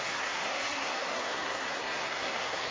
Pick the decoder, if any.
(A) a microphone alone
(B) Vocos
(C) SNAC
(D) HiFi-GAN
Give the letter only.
C